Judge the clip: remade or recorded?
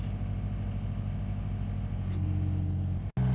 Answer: recorded